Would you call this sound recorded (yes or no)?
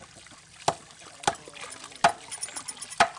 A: yes